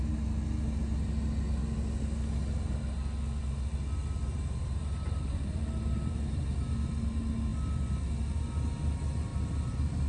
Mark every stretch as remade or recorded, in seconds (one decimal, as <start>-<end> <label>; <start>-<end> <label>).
0.0-4.3 recorded; 4.3-6.4 remade; 6.4-9.3 recorded; 9.3-10.1 remade